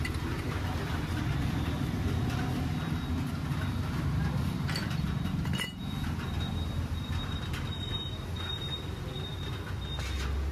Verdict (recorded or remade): recorded